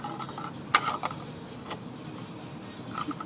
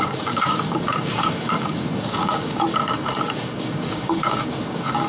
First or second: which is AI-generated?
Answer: second